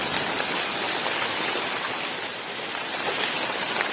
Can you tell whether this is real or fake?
real